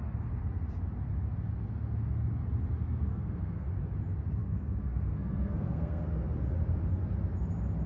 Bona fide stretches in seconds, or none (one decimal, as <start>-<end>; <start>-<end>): 0.0-3.1; 3.7-4.4; 6.0-7.9